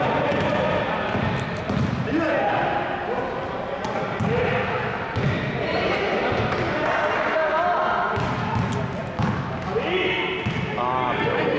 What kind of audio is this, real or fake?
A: real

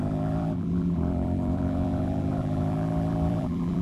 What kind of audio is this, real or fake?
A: fake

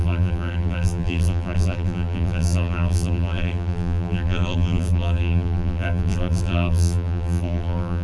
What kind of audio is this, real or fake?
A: fake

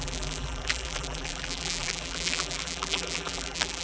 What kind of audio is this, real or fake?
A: fake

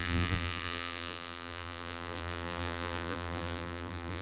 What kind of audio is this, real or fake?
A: fake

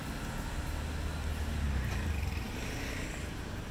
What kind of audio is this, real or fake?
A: real